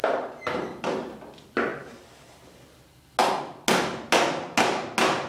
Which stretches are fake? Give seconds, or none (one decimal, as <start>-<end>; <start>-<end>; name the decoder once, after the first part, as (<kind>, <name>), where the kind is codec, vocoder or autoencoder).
0.0-1.2 (vocoder, BigVGAN v2); 1.7-2.3